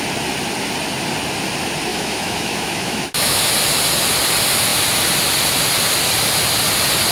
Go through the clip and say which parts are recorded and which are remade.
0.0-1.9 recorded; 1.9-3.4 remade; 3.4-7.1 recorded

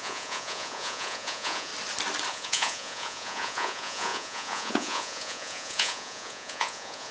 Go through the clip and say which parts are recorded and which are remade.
0.0-1.7 remade; 1.7-2.3 recorded; 2.3-7.1 remade

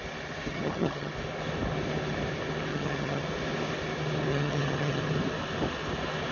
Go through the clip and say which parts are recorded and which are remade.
0.0-0.5 recorded; 0.5-1.1 remade; 1.1-2.7 recorded; 2.7-3.2 remade; 3.2-4.3 recorded; 4.3-5.0 remade; 5.0-6.3 recorded

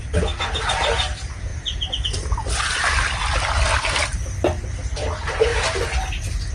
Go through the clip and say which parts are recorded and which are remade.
0.0-6.5 recorded

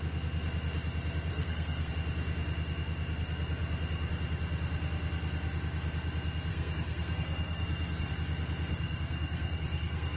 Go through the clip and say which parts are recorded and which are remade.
0.0-1.3 recorded; 1.3-1.9 remade; 1.9-6.5 recorded; 6.5-8.1 remade; 8.1-8.7 recorded; 8.7-10.2 remade